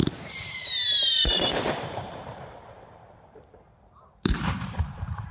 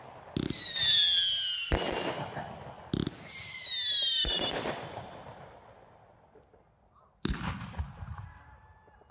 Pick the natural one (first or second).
second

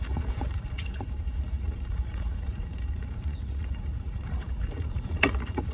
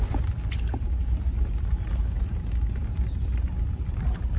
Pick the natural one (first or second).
second